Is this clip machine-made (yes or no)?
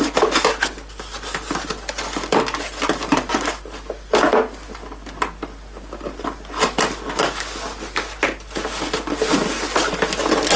no